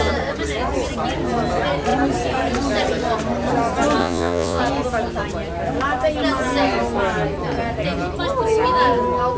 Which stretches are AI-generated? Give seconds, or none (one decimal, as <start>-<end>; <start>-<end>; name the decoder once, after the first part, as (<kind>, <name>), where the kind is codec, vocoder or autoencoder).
4.0-4.6 (vocoder, Vocos)